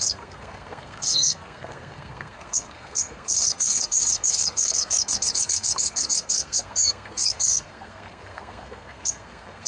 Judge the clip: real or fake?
fake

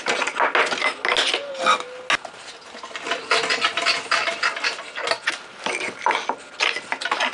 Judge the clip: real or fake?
real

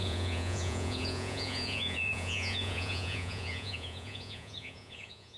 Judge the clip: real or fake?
fake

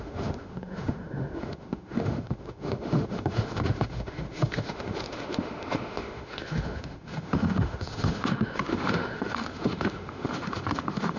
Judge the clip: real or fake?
fake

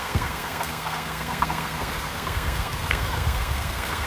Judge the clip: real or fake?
fake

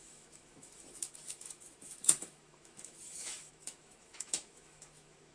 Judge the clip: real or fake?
fake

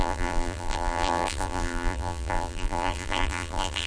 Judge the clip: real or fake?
fake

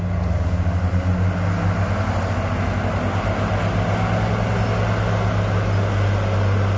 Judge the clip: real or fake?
real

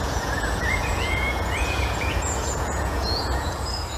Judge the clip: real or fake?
fake